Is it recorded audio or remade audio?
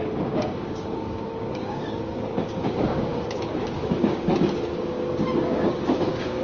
remade